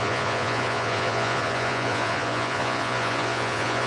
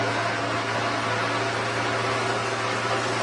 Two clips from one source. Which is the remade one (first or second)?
first